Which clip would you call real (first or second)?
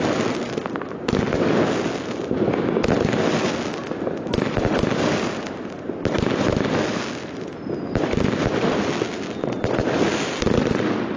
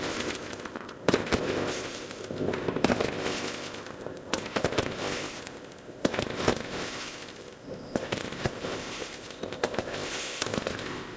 first